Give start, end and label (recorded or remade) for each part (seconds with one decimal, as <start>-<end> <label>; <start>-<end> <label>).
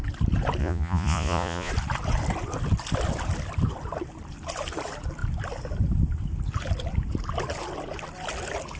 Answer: 0.0-0.6 recorded; 0.6-1.7 remade; 1.7-8.8 recorded